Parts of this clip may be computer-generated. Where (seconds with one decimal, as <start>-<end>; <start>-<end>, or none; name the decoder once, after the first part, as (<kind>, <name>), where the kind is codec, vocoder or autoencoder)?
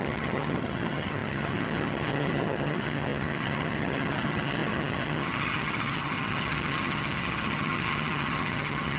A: 0.0-9.0 (vocoder, HiFi-GAN)